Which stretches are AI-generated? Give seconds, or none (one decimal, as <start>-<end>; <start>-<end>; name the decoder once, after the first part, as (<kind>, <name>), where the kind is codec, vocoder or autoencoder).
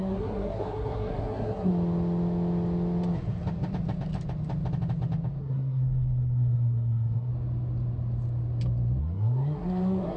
0.0-1.7 (codec, SNAC); 5.4-7.3; 9.0-10.2